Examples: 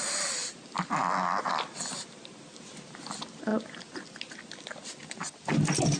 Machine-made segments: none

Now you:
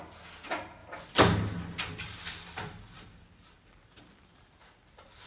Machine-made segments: 0.8-4.0 (vocoder, BigVGAN v2)

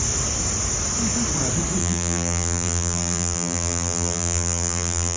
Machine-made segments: 1.8-5.2 (vocoder, BigVGAN v2)